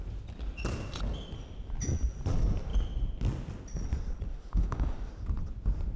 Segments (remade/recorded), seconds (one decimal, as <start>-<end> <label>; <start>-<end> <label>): 0.0-4.3 recorded; 4.3-5.1 remade; 5.1-6.0 recorded